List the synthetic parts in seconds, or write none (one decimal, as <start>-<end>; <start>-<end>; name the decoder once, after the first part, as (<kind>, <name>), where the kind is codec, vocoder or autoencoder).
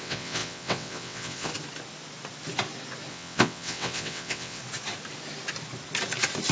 0.0-1.5 (vocoder, WaveNeXt); 3.1-4.6